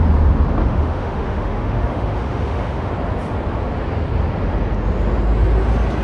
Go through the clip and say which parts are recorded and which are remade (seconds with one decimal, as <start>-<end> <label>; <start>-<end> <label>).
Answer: 0.0-0.6 recorded; 0.6-2.9 remade; 2.9-6.0 recorded